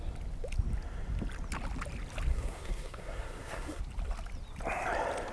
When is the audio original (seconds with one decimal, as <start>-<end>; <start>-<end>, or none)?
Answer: 0.0-2.3; 3.8-5.3